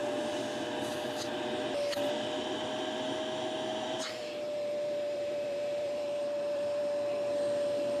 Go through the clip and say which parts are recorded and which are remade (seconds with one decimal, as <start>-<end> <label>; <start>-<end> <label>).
0.0-3.7 recorded; 3.7-6.8 remade; 6.8-8.0 recorded